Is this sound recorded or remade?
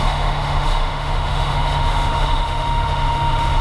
remade